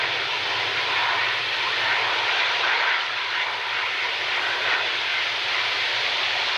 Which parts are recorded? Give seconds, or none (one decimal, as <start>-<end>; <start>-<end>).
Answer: 0.0-1.0; 4.4-5.1